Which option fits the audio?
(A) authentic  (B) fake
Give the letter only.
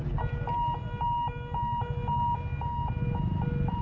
A